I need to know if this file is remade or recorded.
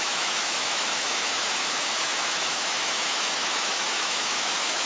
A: remade